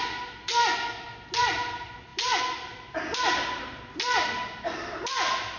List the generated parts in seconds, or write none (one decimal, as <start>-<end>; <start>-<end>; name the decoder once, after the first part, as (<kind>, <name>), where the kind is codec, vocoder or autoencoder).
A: none